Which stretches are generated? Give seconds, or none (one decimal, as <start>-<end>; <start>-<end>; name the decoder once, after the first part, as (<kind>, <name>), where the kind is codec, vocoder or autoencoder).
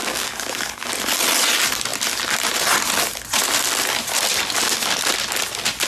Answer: 0.0-0.9 (codec, DAC)